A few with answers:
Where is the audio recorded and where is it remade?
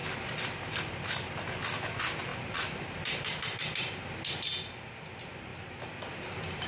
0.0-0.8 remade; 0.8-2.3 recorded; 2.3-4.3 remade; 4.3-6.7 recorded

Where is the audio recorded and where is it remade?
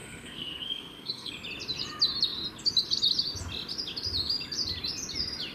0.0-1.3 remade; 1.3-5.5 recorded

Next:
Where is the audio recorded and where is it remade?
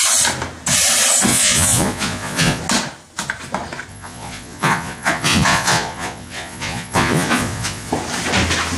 0.0-1.3 recorded; 1.3-2.6 remade; 2.6-3.9 recorded; 3.9-7.9 remade; 7.9-8.8 recorded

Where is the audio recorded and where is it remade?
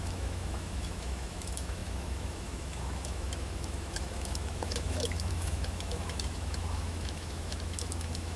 0.0-8.4 remade